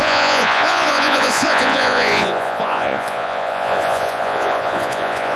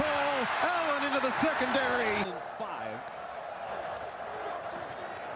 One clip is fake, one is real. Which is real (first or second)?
second